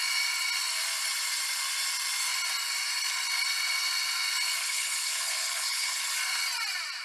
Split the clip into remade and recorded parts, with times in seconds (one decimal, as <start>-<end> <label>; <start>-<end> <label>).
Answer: 0.0-4.6 recorded; 4.6-6.1 remade; 6.1-7.0 recorded